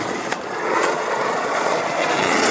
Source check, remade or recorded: remade